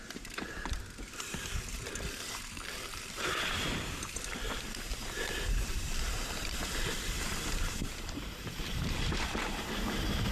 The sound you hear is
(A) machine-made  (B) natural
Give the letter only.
A